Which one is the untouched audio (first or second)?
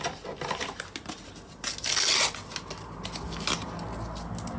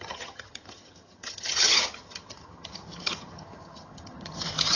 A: first